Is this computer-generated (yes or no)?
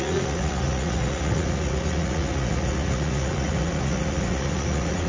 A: yes